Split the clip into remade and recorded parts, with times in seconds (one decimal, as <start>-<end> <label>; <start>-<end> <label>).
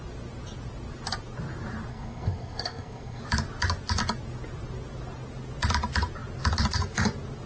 0.0-1.9 recorded; 1.9-3.2 remade; 3.2-7.5 recorded